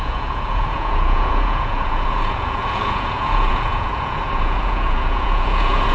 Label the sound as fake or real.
fake